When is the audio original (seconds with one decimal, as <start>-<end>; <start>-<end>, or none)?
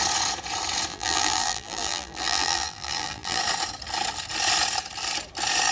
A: 0.0-0.9; 3.4-5.7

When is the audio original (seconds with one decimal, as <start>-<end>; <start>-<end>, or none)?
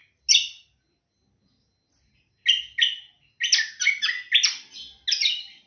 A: 0.0-5.7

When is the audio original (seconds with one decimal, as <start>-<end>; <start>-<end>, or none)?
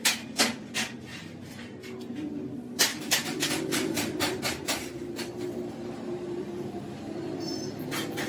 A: 0.0-1.1; 1.8-2.9; 6.7-8.3